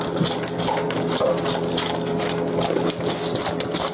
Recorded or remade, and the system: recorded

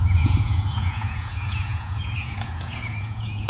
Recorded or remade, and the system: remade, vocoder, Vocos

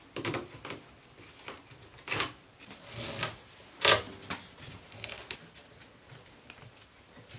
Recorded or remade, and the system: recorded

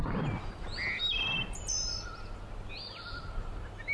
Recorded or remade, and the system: recorded